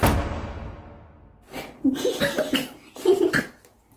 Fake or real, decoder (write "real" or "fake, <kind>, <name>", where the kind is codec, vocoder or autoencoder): real